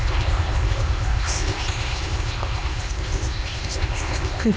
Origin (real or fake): fake